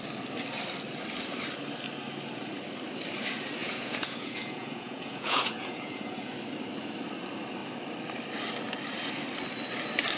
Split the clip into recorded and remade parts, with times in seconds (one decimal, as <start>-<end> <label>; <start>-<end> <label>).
0.0-3.6 recorded; 3.6-6.3 remade; 6.3-10.2 recorded